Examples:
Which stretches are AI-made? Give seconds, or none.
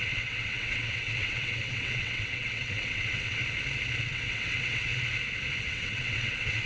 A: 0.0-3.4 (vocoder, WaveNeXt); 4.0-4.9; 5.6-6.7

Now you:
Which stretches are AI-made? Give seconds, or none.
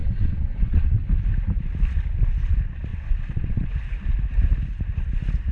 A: 0.0-0.9 (vocoder, WaveNeXt); 2.9-3.7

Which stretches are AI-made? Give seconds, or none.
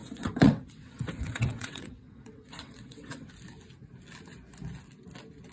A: 0.0-3.3 (vocoder, WaveNeXt)